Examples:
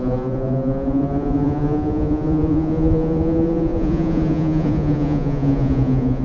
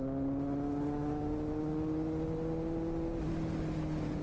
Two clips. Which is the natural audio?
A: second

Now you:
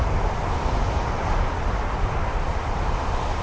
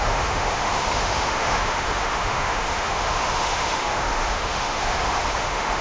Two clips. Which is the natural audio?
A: first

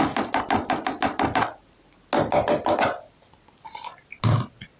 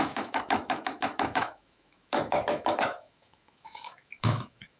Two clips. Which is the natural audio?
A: first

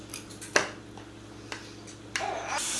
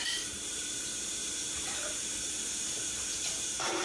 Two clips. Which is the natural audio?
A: first